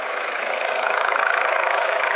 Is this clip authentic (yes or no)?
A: no